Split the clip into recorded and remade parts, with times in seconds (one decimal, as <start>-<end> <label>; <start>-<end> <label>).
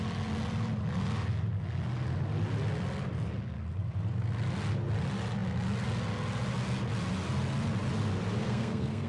0.0-8.4 recorded; 8.4-9.1 remade